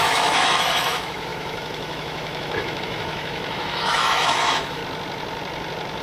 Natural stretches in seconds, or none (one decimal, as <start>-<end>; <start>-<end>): 4.8-6.0